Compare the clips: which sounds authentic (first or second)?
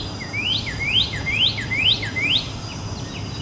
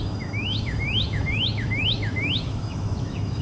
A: first